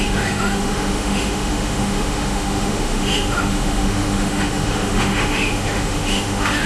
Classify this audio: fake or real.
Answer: fake